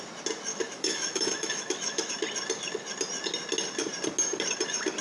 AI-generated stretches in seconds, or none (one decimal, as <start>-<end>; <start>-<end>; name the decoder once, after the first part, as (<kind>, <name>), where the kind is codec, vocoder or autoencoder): 0.5-2.1 (autoencoder, DAC-VAE)